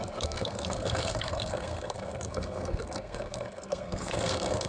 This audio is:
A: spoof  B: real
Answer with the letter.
A